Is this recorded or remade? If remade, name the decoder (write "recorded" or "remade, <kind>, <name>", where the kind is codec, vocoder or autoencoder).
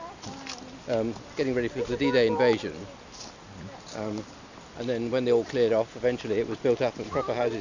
recorded